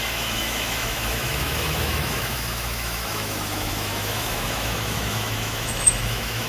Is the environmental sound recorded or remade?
remade